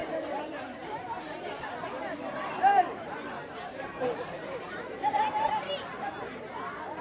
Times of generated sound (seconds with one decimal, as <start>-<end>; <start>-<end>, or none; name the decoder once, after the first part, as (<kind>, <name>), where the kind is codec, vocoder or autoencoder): 0.0-1.2 (vocoder, BigVGAN v2); 2.1-6.3